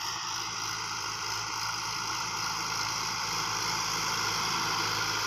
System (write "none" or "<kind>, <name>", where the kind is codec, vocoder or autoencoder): vocoder, BigVGAN v2